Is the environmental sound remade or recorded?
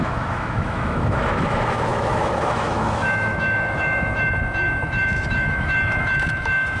remade